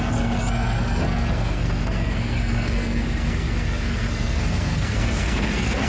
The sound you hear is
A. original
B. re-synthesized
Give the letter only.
B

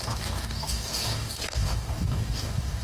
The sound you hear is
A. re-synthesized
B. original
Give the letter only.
A